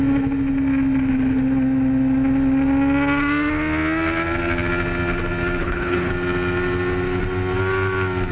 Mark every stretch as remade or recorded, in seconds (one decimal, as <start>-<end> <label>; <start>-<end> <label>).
0.0-5.6 recorded; 5.6-6.1 remade; 6.1-8.3 recorded